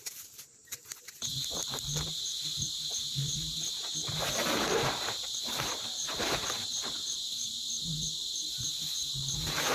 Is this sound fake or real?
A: fake